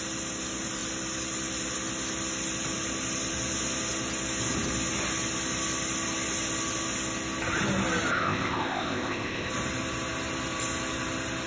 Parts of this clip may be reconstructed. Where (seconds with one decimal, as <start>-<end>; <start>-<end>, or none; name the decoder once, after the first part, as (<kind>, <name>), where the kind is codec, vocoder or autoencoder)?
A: 8.1-9.5 (codec, ZipCodec)